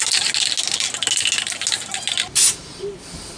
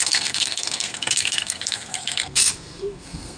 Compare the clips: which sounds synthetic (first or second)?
second